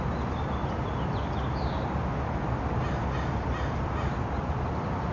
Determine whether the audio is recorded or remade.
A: recorded